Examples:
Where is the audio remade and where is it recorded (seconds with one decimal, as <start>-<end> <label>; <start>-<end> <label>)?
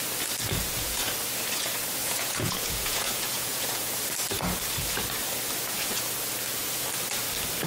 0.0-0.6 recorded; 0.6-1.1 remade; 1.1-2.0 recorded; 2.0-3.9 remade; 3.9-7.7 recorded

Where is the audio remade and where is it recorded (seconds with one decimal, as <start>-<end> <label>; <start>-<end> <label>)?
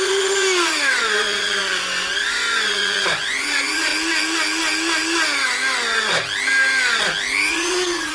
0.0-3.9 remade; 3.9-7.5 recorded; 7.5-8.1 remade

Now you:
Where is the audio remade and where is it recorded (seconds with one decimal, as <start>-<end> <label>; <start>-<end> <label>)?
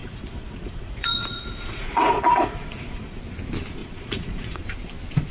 0.0-3.2 remade; 3.2-3.8 recorded; 3.8-4.6 remade; 4.6-5.3 recorded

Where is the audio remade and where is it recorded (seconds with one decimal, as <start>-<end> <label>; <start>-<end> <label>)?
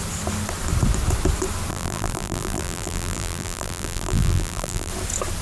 0.0-1.7 recorded; 1.7-4.9 remade; 4.9-5.4 recorded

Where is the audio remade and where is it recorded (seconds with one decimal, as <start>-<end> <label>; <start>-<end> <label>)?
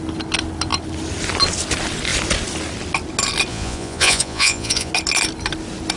0.0-3.5 recorded; 3.5-4.9 remade; 4.9-6.0 recorded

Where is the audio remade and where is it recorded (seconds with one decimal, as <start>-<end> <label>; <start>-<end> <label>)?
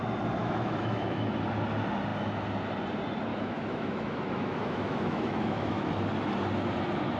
0.0-0.4 recorded; 0.4-1.3 remade; 1.3-3.3 recorded; 3.3-5.9 remade; 5.9-7.2 recorded